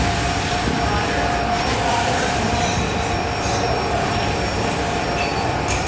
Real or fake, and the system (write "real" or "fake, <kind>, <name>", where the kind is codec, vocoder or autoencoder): fake, vocoder, BigVGAN v2